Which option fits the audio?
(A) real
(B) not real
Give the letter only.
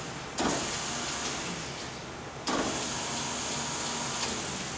A